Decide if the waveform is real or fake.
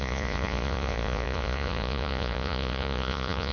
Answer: fake